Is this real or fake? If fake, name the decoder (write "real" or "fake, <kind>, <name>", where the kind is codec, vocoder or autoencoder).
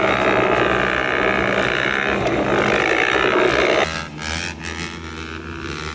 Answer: real